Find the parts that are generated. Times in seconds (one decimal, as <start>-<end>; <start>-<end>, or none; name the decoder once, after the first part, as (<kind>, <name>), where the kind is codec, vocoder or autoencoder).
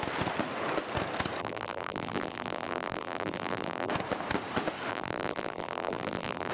1.4-3.9 (vocoder, BigVGAN v2); 4.9-6.5